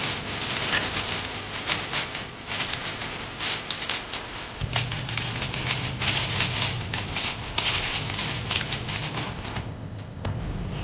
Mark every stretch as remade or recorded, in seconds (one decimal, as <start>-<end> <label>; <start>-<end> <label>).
0.0-3.9 recorded; 3.9-4.7 remade; 4.7-7.1 recorded; 7.1-8.0 remade; 8.0-9.3 recorded; 9.3-10.4 remade; 10.4-10.8 recorded